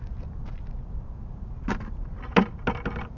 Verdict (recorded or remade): recorded